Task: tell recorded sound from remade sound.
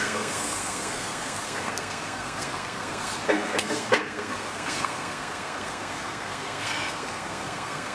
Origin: remade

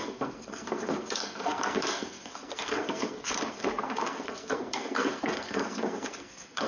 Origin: remade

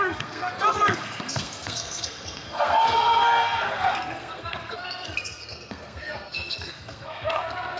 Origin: remade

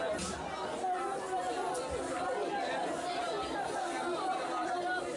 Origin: recorded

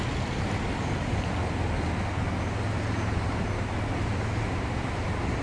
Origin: recorded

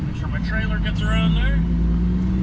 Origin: recorded